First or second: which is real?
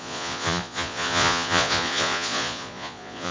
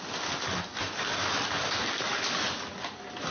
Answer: second